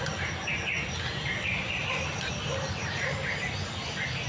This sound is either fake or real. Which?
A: real